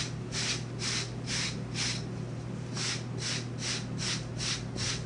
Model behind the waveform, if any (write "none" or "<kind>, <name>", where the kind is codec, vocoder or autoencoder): none